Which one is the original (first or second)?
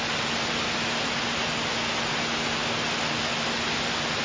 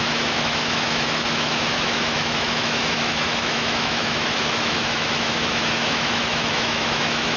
first